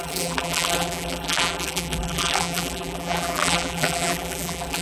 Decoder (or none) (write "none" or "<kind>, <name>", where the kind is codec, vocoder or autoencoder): vocoder, BigVGAN v2